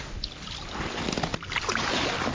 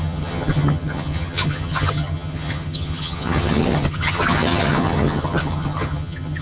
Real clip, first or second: first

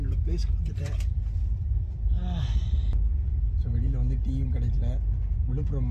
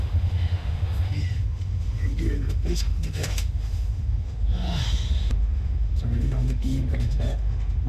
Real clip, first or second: first